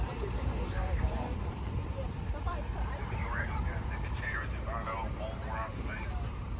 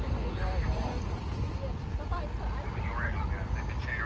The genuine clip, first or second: second